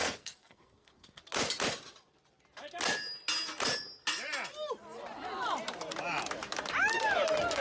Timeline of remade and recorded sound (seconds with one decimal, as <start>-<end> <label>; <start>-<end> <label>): 0.0-1.2 remade; 1.2-7.6 recorded